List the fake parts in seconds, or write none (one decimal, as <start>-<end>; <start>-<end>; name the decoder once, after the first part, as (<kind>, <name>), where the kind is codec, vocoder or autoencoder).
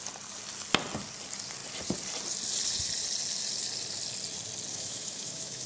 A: 4.7-5.7 (autoencoder, DAC-VAE)